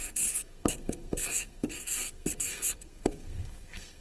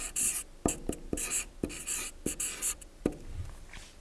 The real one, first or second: second